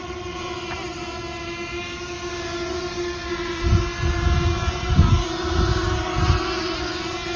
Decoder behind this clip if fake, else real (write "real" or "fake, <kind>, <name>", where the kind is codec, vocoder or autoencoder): real